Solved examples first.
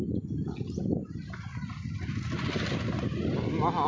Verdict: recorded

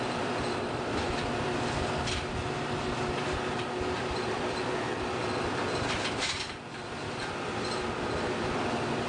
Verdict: recorded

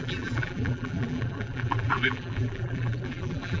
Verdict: remade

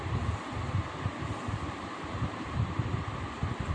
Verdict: recorded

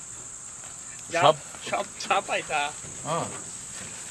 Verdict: recorded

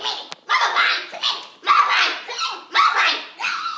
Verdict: recorded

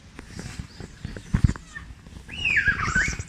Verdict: recorded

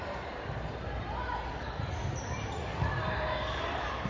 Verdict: remade